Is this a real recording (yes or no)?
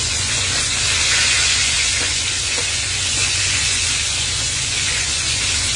no